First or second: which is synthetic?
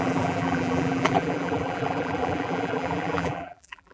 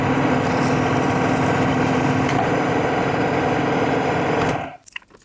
first